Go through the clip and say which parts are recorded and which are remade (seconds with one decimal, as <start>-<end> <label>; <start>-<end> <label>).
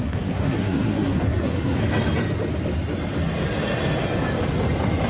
0.0-1.8 remade; 1.8-5.1 recorded